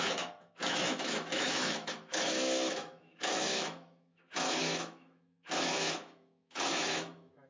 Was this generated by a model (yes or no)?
yes